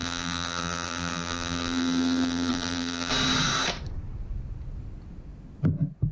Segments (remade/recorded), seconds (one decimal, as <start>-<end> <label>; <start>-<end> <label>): 0.0-3.1 remade; 3.1-6.1 recorded